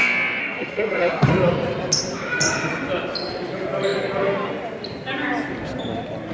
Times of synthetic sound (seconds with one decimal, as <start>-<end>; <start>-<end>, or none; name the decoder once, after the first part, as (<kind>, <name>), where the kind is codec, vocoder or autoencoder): 0.4-1.3 (codec, SNAC)